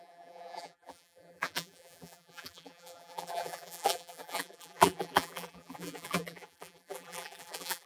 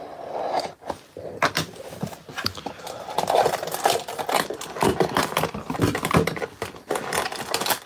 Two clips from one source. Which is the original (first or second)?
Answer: second